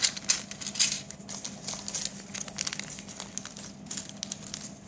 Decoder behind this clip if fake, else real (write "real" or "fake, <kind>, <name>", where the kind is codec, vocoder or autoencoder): real